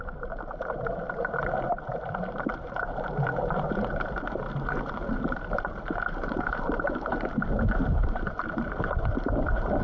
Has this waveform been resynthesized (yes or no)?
yes